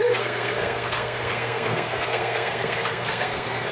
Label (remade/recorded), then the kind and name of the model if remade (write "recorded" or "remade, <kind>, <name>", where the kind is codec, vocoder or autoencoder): remade, codec, SNAC